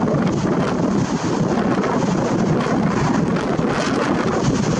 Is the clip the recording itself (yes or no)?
yes